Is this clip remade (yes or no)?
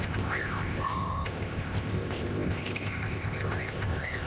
yes